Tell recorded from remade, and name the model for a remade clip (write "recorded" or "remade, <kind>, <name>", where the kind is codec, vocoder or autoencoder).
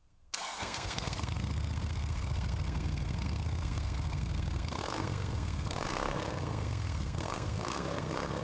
remade, codec, SNAC